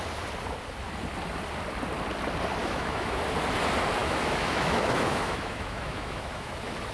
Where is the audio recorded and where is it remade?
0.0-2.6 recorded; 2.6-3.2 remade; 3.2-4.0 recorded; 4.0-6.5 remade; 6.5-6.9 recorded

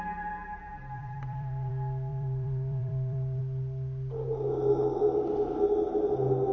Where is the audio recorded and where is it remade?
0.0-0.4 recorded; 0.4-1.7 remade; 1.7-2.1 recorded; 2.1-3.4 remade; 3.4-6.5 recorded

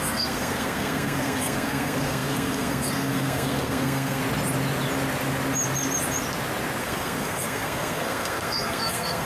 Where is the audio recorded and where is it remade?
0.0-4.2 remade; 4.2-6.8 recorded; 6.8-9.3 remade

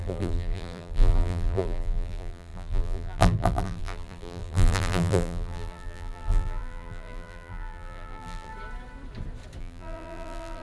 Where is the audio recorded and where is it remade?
0.0-8.5 remade; 8.5-9.6 recorded; 9.6-10.6 remade

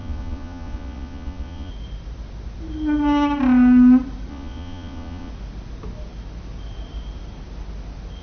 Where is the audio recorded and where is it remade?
0.0-1.7 remade; 1.7-4.3 recorded; 4.3-5.3 remade; 5.3-8.2 recorded

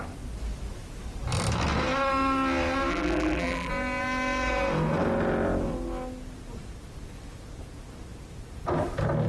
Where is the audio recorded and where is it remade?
0.0-2.9 recorded; 2.9-3.7 remade; 3.7-9.3 recorded

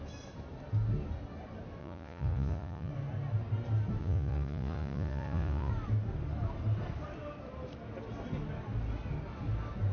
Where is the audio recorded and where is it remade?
0.0-1.8 recorded; 1.8-2.9 remade; 2.9-4.0 recorded; 4.0-5.7 remade; 5.7-9.9 recorded

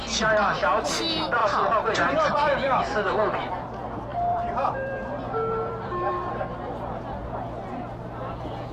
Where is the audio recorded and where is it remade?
0.0-1.4 recorded; 1.4-3.5 remade; 3.5-4.1 recorded; 4.1-6.3 remade; 6.3-8.7 recorded